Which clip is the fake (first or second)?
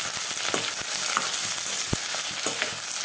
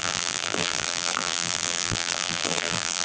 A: second